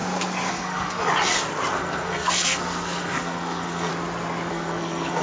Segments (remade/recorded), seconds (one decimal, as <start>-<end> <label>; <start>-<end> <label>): 0.0-0.5 recorded; 0.5-1.0 remade; 1.0-1.7 recorded; 1.7-3.9 remade; 3.9-4.5 recorded; 4.5-5.2 remade